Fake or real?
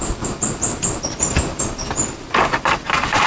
real